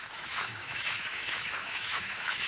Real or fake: fake